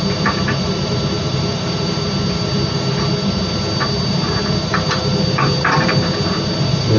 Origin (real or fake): fake